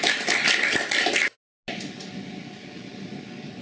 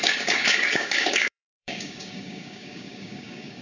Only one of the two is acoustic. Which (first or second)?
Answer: first